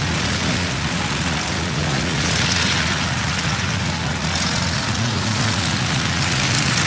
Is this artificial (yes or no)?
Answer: yes